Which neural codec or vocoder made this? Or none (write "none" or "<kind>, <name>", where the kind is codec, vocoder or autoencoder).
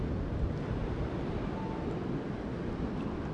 none